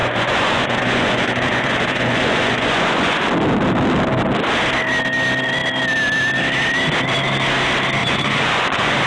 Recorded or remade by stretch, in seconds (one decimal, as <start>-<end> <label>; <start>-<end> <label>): 0.0-3.3 remade; 3.3-8.0 recorded; 8.0-9.1 remade